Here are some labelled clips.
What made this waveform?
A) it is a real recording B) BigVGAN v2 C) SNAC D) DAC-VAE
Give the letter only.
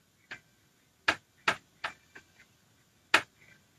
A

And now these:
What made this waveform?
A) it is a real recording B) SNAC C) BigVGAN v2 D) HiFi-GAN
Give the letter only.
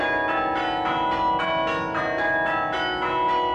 A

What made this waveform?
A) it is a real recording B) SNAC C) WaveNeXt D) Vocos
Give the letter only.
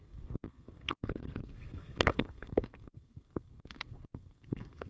B